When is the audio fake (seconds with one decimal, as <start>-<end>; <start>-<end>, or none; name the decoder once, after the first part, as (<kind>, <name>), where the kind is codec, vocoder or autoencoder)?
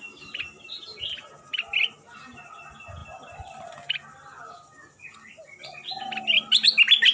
3.0-5.3 (vocoder, BigVGAN v2)